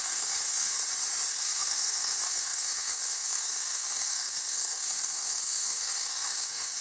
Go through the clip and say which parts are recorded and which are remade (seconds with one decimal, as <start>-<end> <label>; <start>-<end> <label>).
0.0-0.8 remade; 0.8-1.3 recorded; 1.3-6.8 remade